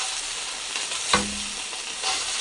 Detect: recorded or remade recorded